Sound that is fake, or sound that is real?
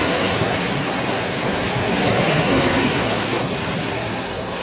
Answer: fake